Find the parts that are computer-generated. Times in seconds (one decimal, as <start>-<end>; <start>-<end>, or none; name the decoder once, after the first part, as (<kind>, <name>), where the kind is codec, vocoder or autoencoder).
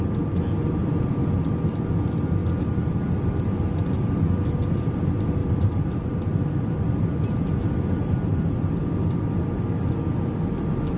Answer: 0.8-1.3 (vocoder, BigVGAN v2); 5.4-7.6